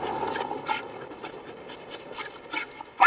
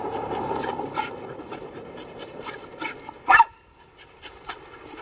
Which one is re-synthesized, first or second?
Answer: second